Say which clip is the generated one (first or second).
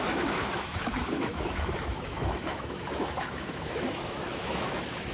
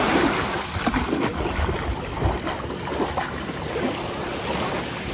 first